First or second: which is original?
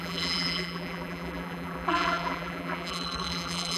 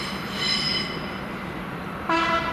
second